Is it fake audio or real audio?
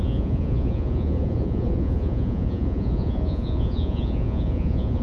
fake